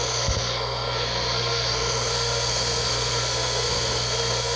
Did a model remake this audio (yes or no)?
yes